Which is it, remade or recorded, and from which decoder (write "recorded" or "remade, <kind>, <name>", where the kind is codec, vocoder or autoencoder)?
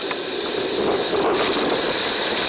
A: recorded